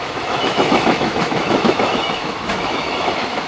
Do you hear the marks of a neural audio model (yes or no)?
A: yes